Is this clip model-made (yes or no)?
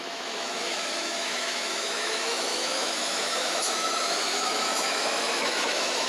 yes